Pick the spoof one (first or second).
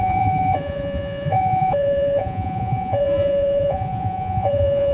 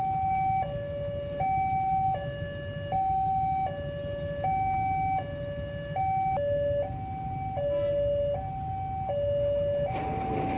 first